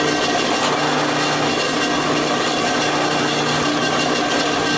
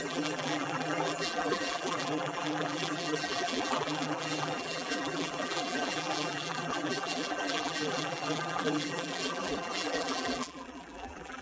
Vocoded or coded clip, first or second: second